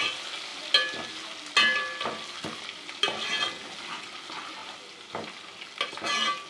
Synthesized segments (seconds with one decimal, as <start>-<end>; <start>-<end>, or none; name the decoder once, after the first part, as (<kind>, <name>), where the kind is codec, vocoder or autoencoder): none